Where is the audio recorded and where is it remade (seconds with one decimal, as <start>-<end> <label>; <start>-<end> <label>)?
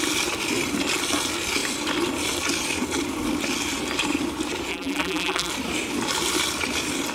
0.0-4.7 recorded; 4.7-5.5 remade; 5.5-7.1 recorded